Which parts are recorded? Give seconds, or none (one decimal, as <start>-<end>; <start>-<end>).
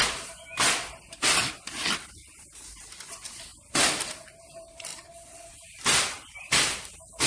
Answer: 0.5-3.1; 3.5-4.4